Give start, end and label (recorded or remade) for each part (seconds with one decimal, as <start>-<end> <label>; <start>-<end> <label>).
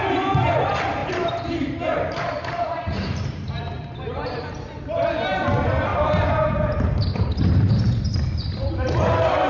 0.0-1.0 recorded; 1.0-4.8 remade; 4.8-5.9 recorded; 5.9-7.7 remade; 7.7-9.5 recorded